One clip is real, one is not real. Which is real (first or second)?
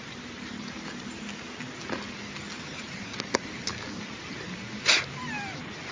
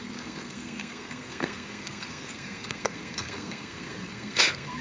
first